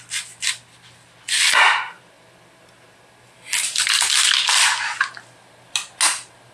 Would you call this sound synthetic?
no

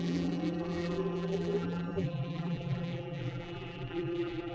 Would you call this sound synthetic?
yes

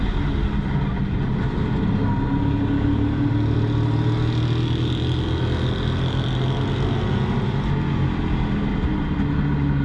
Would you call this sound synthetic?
no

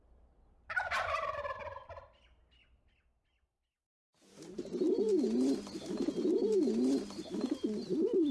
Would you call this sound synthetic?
no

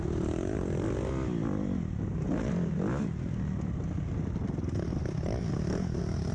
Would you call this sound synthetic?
no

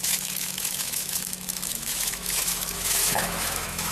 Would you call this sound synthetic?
yes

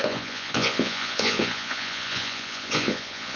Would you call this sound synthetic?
yes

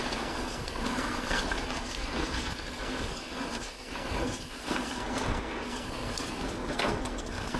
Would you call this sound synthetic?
yes